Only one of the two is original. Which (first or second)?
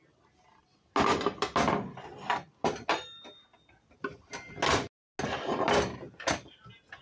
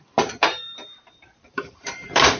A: first